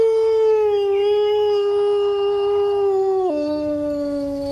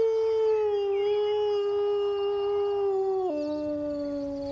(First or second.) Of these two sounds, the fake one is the first